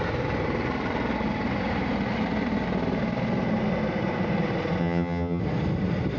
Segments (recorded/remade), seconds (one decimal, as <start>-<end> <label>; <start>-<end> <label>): 0.0-4.8 recorded; 4.8-5.4 remade; 5.4-6.2 recorded